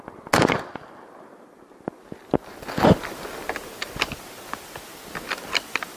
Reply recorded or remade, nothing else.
recorded